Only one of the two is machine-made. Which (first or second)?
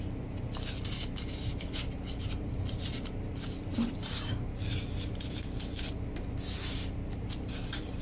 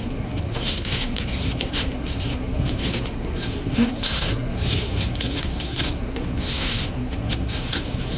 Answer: second